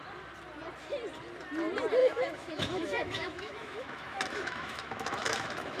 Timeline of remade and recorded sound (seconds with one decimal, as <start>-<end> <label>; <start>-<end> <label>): 0.0-2.0 recorded; 2.0-5.8 remade